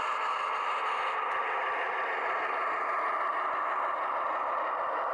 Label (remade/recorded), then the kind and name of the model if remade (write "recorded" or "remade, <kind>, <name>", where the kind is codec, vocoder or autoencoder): recorded